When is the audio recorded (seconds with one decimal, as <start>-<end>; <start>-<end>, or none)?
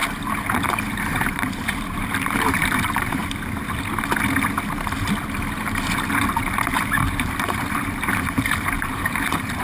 0.0-0.9; 3.2-6.8